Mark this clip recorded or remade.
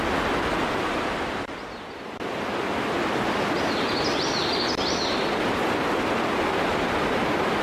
recorded